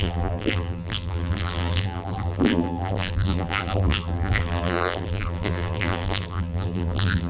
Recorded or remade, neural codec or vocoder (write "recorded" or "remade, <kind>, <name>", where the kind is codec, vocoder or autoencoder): remade, vocoder, BigVGAN v2